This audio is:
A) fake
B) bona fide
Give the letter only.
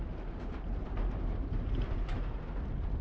B